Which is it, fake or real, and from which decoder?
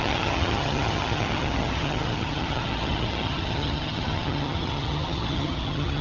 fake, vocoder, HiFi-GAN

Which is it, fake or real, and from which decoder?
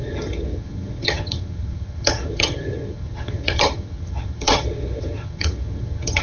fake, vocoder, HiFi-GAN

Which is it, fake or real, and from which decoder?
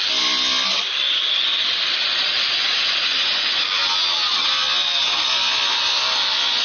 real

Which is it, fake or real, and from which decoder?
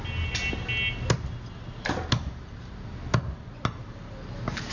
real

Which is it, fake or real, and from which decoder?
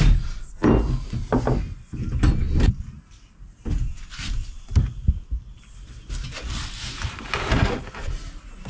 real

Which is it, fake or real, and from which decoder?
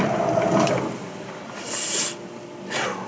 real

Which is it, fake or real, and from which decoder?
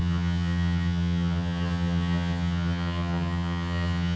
fake, vocoder, HiFi-GAN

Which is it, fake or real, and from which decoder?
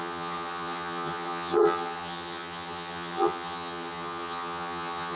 fake, vocoder, HiFi-GAN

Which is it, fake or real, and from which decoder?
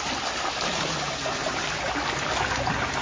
real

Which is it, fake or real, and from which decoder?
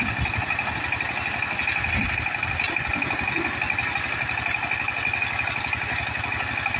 real